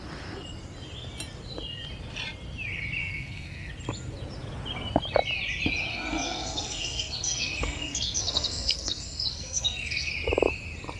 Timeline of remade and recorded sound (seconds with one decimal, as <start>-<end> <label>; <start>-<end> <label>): 0.0-3.0 recorded; 3.0-3.7 remade; 3.7-5.9 recorded; 5.9-10.1 remade; 10.1-11.0 recorded